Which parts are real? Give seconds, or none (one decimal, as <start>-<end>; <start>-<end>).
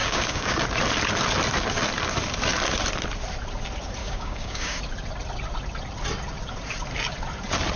0.6-4.0; 4.8-7.8